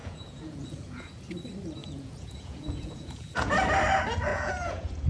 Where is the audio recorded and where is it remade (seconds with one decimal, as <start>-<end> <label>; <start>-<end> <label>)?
0.0-1.2 remade; 1.2-1.8 recorded; 1.8-3.5 remade; 3.5-4.3 recorded; 4.3-5.1 remade